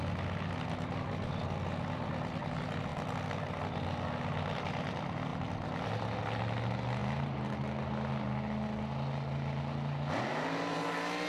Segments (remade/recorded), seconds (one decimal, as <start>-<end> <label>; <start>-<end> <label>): 0.0-11.3 recorded